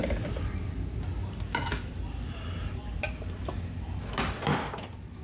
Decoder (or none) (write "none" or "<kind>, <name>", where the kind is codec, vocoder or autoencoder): none